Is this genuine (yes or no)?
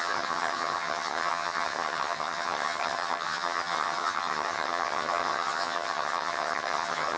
no